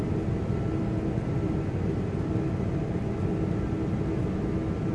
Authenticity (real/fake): real